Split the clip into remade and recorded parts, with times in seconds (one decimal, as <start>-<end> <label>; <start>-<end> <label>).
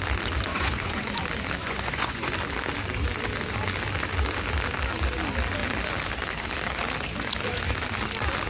0.0-0.5 recorded; 0.5-1.2 remade; 1.2-1.6 recorded; 1.6-2.3 remade; 2.3-8.5 recorded